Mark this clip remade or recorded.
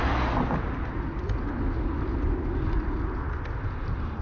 recorded